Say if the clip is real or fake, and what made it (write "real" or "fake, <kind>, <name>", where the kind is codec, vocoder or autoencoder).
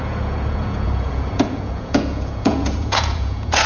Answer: fake, vocoder, Vocos